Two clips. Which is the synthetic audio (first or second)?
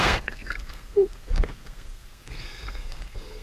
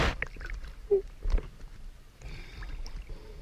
first